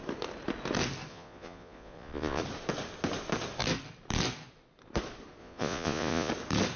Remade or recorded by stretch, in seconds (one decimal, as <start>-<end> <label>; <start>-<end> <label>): 0.0-1.1 recorded; 1.1-2.4 remade; 2.4-5.4 recorded; 5.4-6.3 remade; 6.3-6.8 recorded